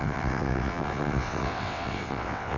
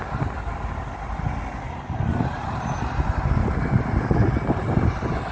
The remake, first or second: first